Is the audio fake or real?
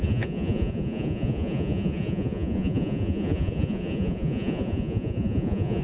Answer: fake